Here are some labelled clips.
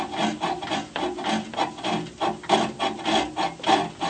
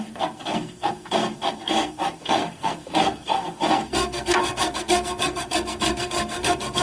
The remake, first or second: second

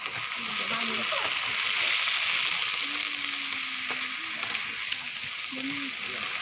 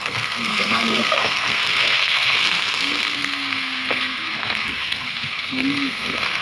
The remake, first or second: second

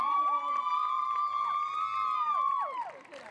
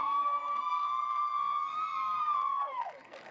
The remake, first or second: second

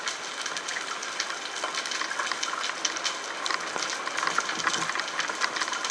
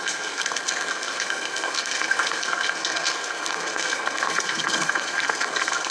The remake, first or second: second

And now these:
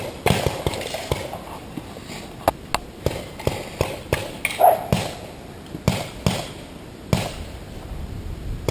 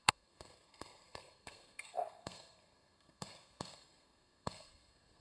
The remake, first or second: second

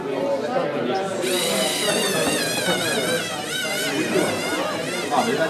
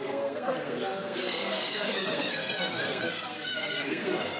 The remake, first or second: second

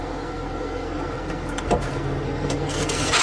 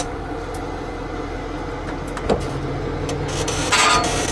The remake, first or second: first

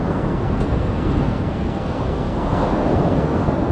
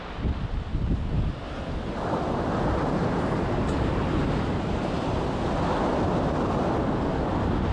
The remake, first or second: first